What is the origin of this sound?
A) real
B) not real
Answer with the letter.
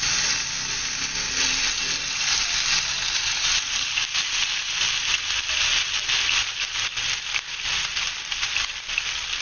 A